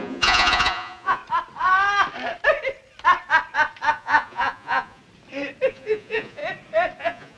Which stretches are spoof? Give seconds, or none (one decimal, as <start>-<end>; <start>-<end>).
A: 0.0-1.2; 3.9-5.0; 5.7-6.4; 7.0-7.4

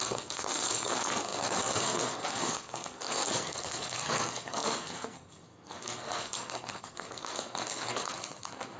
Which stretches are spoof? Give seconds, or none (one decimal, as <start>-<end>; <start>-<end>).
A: 0.0-8.8

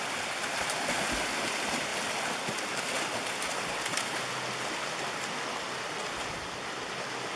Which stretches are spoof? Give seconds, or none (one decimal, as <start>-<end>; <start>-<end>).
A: none

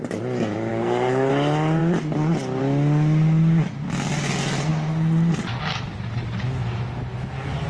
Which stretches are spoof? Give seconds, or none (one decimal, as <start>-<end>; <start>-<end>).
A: 0.7-1.3

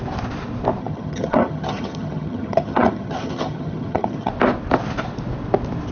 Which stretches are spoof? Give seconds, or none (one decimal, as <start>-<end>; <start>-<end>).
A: 0.8-4.3

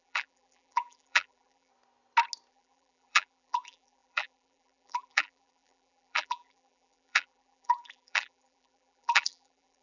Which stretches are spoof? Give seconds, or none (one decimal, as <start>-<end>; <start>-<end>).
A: 0.0-1.7; 2.5-9.8

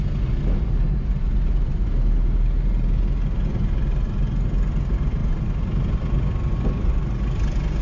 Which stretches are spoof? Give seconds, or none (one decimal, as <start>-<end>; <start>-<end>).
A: none